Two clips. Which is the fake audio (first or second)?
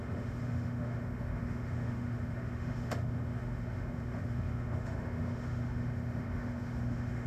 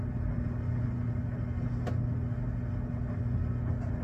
first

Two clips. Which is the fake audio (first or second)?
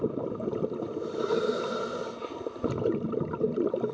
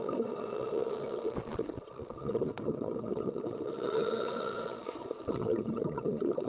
second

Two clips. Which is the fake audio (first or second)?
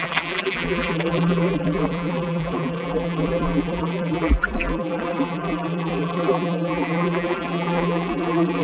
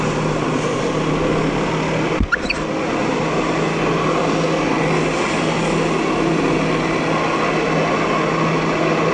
first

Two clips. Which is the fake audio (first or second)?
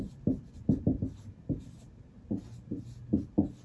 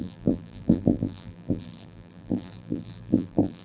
second